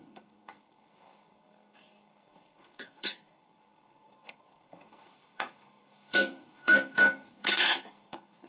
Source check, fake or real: fake